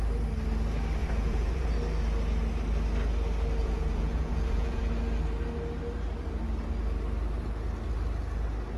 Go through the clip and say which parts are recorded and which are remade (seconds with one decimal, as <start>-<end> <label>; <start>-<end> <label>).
0.0-1.0 recorded; 1.0-1.7 remade; 1.7-3.6 recorded; 3.6-4.8 remade; 4.8-8.8 recorded